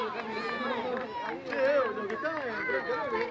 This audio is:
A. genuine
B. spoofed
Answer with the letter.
A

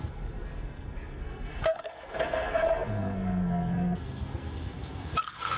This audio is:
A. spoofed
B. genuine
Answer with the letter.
A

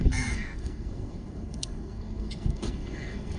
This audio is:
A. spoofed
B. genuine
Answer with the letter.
A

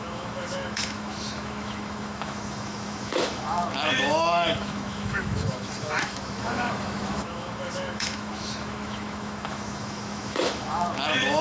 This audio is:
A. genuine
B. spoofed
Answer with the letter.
B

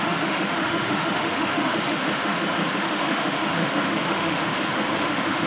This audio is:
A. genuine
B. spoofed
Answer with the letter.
B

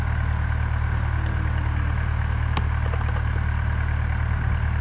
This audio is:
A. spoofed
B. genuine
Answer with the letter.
B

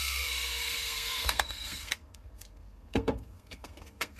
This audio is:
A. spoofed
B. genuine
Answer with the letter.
A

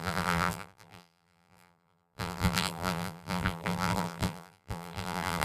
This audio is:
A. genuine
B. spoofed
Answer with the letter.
B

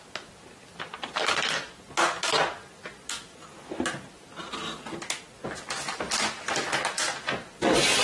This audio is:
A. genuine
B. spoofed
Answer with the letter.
A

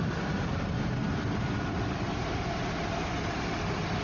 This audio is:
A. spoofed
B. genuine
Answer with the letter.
B